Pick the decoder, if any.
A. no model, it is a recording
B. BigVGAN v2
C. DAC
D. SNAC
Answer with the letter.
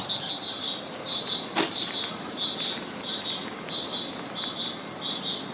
A